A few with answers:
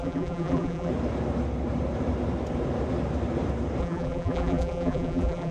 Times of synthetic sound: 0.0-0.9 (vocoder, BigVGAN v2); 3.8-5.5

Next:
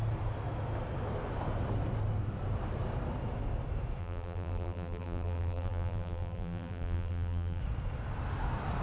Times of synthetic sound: 4.0-7.6 (vocoder, BigVGAN v2)

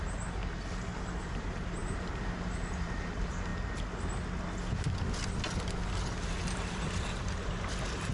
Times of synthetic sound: 0.0-0.4 (vocoder, BigVGAN v2); 1.2-3.5; 6.2-8.1

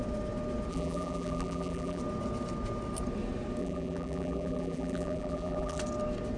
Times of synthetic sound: 0.7-2.0 (vocoder, BigVGAN v2); 3.6-5.8

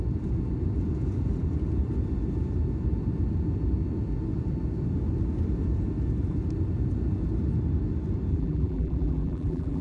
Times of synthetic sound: 8.3-9.8 (vocoder, BigVGAN v2)

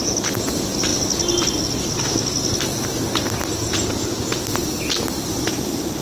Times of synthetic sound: none

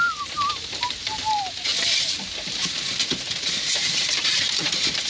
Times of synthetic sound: 0.0-5.1 (vocoder, BigVGAN v2)